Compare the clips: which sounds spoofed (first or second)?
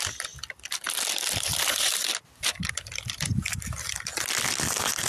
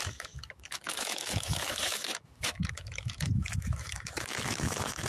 second